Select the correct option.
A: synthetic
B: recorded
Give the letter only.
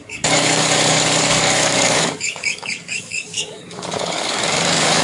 A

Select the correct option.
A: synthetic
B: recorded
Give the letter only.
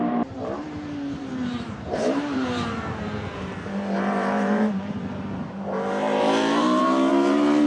A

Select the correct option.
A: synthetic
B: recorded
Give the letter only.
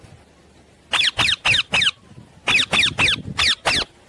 B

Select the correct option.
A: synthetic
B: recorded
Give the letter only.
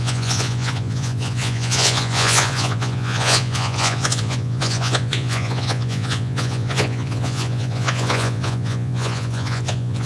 A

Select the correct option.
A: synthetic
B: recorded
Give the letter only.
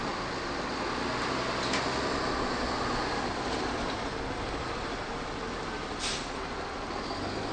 B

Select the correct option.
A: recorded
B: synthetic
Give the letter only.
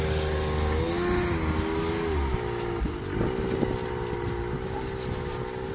A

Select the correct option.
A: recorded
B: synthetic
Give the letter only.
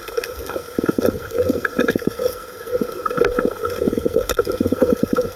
B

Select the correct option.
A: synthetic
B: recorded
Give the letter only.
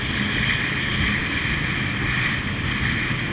B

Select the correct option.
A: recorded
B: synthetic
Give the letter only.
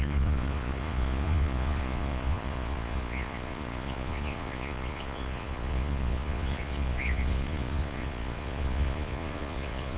B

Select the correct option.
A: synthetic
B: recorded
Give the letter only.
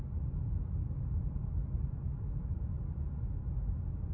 B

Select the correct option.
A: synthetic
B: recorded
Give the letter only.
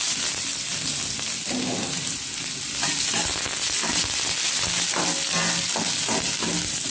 B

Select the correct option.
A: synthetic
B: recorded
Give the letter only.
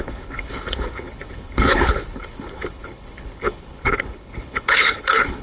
A